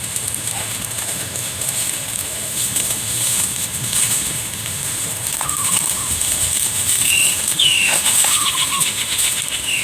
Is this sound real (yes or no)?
no